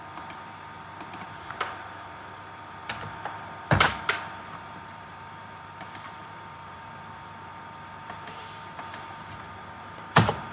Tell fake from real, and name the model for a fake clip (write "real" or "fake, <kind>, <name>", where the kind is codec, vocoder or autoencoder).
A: fake, vocoder, BigVGAN v2